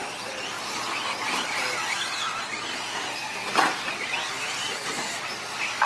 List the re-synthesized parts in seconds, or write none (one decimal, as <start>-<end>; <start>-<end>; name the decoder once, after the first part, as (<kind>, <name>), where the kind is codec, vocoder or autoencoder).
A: none